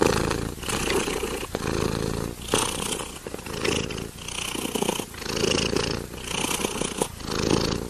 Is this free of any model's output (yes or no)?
yes